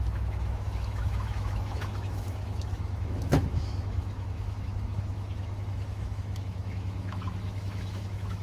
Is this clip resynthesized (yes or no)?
yes